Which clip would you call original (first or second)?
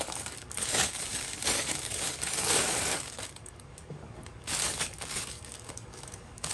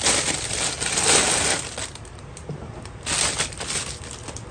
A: second